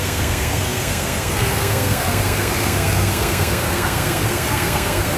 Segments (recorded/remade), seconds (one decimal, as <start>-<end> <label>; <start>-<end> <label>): 0.0-5.2 remade